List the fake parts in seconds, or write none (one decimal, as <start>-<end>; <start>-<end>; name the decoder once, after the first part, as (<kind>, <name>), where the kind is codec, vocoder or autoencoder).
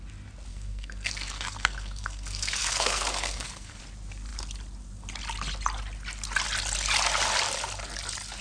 0.5-3.8 (codec, SNAC)